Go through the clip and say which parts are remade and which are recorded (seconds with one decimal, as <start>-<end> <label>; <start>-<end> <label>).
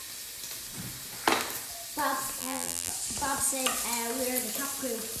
0.0-2.4 recorded; 2.4-2.9 remade; 2.9-5.2 recorded